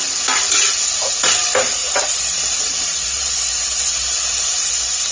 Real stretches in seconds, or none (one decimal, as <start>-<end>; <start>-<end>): 0.0-1.8; 4.5-5.1